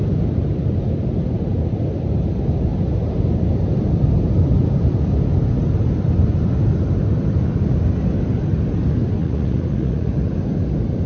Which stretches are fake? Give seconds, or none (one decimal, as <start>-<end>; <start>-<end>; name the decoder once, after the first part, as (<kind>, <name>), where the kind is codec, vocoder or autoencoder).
9.2-10.1 (vocoder, Vocos)